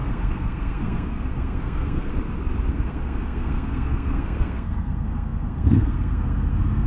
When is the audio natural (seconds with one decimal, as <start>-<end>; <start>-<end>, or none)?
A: 2.1-2.7